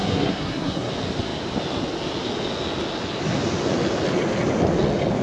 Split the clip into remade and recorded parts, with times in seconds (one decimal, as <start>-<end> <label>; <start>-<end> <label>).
0.0-0.9 remade; 0.9-5.2 recorded